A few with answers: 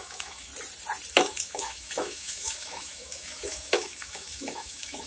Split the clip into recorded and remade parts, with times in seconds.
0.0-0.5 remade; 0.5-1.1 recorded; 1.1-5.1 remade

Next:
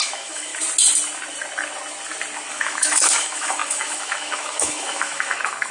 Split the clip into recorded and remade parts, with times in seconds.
0.0-0.5 remade; 0.5-2.5 recorded; 2.5-5.7 remade

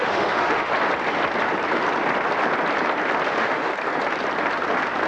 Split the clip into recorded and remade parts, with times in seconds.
0.0-0.7 remade; 0.7-3.3 recorded; 3.3-3.7 remade; 3.7-5.1 recorded

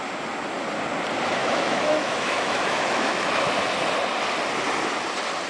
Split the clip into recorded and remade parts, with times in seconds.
0.0-1.4 recorded; 1.4-3.5 remade; 3.5-5.5 recorded

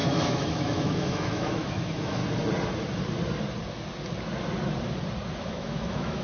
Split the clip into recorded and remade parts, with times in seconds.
0.0-2.2 remade; 2.2-5.4 recorded; 5.4-6.2 remade

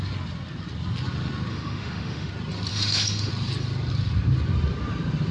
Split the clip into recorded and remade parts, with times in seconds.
0.0-1.5 recorded; 1.5-2.3 remade; 2.3-2.7 recorded; 2.7-3.3 remade; 3.3-5.3 recorded

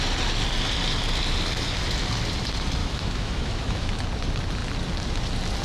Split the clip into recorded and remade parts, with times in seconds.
0.0-2.8 recorded; 2.8-3.9 remade; 3.9-5.6 recorded